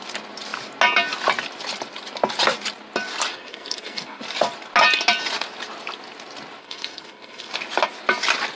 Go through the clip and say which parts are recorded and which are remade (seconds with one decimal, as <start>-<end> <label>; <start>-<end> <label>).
0.0-3.3 recorded; 3.3-4.2 remade; 4.2-6.6 recorded; 6.6-7.5 remade; 7.5-8.6 recorded